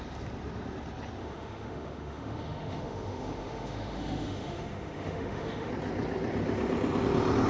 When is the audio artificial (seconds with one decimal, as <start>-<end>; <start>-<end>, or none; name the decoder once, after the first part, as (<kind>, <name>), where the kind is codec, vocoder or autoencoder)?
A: 1.2-5.7 (autoencoder, DAC-VAE)